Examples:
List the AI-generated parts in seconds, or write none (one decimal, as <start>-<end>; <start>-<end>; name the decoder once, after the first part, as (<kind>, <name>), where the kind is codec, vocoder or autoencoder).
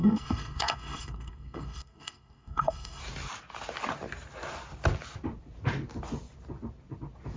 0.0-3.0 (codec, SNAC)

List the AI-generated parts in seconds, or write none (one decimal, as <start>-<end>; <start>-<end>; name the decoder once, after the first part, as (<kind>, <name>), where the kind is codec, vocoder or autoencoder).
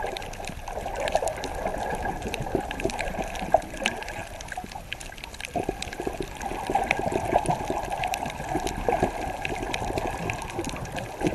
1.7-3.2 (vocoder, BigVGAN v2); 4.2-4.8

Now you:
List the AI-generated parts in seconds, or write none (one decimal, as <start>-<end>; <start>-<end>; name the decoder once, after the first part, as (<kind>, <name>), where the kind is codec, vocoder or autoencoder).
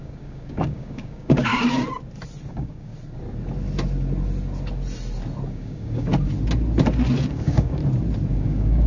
0.0-1.5 (codec, DAC); 2.5-2.9; 5.5-6.1; 7.3-7.8; 8.3-8.9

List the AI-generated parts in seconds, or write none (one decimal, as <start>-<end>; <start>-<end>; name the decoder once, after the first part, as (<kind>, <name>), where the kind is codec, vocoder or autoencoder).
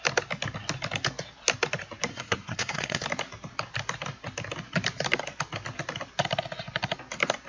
2.1-3.0 (codec, SNAC)